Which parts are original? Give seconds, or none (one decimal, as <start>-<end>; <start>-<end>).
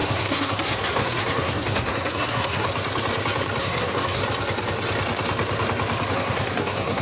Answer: 2.7-3.6; 4.2-6.1